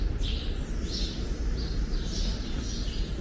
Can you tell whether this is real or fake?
real